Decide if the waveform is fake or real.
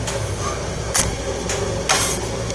real